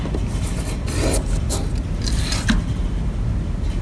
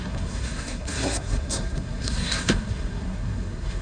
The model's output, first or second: second